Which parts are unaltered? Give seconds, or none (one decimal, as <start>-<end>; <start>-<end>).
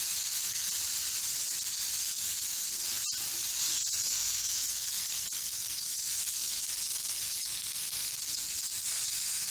0.7-2.0; 3.0-3.7